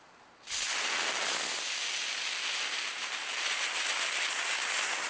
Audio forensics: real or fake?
real